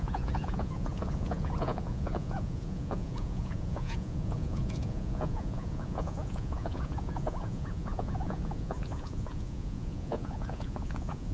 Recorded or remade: remade